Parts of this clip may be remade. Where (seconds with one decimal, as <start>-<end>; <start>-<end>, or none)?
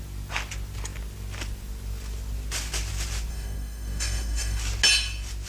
3.3-4.6